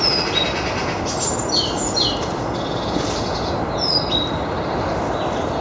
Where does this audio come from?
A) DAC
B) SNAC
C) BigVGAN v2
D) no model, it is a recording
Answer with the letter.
D